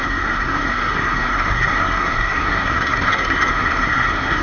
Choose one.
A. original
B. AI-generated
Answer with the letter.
B